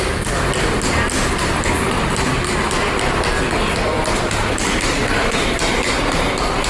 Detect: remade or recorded recorded